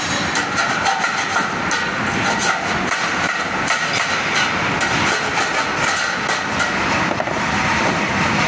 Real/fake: real